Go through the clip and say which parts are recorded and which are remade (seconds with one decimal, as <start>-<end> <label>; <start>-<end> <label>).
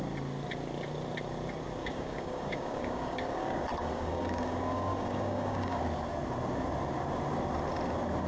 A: 0.0-1.8 recorded; 1.8-5.8 remade; 5.8-8.3 recorded